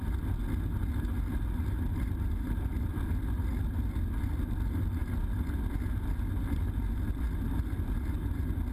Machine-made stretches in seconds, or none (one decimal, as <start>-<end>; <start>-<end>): none